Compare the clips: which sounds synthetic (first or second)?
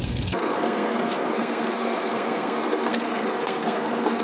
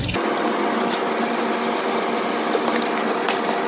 first